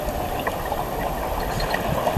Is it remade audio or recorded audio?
recorded